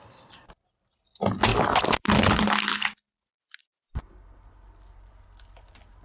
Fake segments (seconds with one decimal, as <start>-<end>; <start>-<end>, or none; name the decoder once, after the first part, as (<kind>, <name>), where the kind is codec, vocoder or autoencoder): none